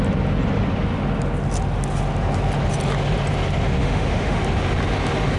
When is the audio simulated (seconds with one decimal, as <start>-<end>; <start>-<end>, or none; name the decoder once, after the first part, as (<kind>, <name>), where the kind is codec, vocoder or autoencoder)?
3.8-4.4 (autoencoder, DAC-VAE)